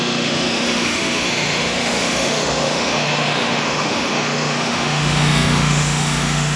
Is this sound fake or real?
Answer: fake